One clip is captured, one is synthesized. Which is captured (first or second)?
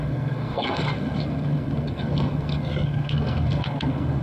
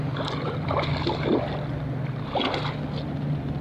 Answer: second